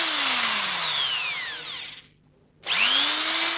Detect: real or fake real